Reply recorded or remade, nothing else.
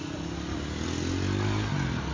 recorded